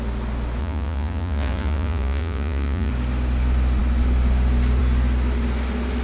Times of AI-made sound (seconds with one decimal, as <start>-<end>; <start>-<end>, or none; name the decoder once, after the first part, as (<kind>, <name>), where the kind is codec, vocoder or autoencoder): 0.6-2.9 (vocoder, Vocos)